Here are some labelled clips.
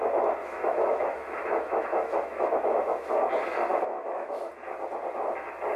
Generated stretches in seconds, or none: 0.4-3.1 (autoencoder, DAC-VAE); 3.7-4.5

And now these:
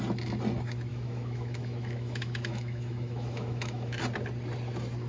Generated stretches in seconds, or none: 0.9-4.0 (autoencoder, DAC-VAE)

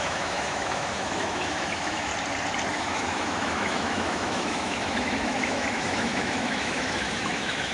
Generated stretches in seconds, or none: 0.0-2.1 (autoencoder, DAC-VAE); 2.7-7.7

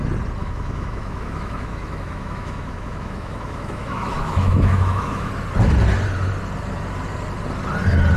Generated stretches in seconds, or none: 0.4-5.3 (autoencoder, DAC-VAE)

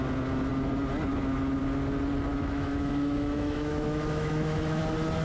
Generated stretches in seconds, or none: 2.3-4.8 (autoencoder, DAC-VAE)

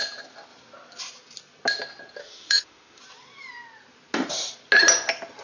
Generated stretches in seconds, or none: 2.2-3.0 (autoencoder, DAC-VAE)